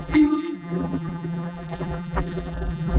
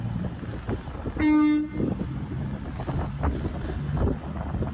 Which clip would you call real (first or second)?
second